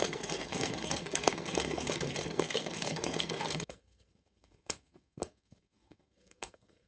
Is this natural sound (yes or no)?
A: no